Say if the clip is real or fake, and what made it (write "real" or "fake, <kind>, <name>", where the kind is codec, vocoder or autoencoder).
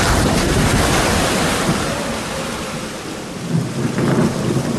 real